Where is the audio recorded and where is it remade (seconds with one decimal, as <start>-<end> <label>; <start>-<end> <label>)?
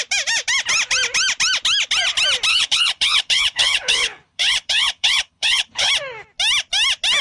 0.0-2.5 recorded; 2.5-5.9 remade; 5.9-7.2 recorded